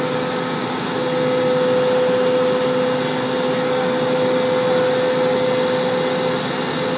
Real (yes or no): yes